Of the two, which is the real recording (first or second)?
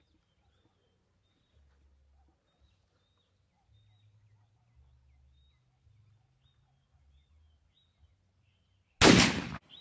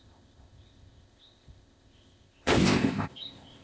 first